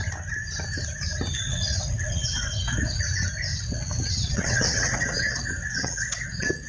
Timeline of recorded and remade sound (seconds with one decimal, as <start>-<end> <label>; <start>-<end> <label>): 0.0-1.5 recorded; 1.5-3.0 remade; 3.0-3.5 recorded; 3.5-6.7 remade